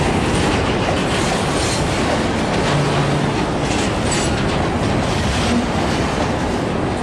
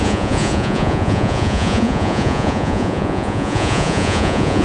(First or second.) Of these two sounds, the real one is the first